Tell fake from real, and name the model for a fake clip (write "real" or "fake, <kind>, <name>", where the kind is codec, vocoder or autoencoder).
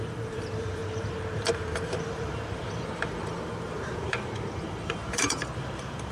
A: fake, vocoder, BigVGAN v2